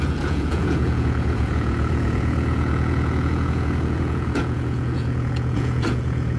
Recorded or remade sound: remade